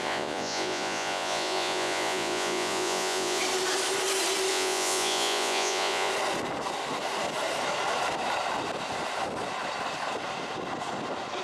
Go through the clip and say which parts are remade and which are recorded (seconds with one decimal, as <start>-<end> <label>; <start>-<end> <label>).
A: 0.0-3.4 remade; 3.4-4.5 recorded; 4.5-6.1 remade; 6.1-11.4 recorded